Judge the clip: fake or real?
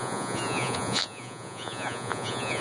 fake